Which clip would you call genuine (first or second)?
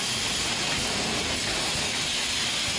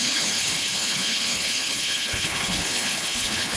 first